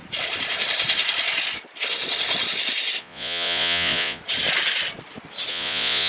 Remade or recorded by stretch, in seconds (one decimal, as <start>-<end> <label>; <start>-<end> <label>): 0.0-3.0 recorded; 3.0-4.2 remade; 4.2-5.5 recorded; 5.5-6.1 remade

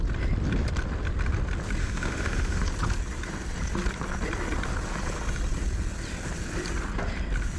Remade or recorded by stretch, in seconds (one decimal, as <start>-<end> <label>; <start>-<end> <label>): 0.0-1.8 recorded; 1.8-2.6 remade; 2.6-7.6 recorded